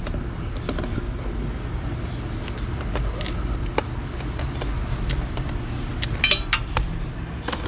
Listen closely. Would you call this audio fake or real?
real